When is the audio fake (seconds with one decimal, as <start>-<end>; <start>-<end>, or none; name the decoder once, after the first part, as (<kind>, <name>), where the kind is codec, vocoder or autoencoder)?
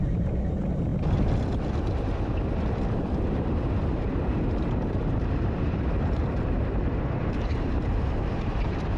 0.0-0.9 (vocoder, BigVGAN v2); 3.0-9.0